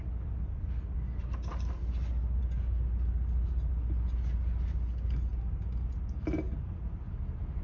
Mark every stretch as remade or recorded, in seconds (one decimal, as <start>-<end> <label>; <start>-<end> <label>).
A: 0.0-7.6 recorded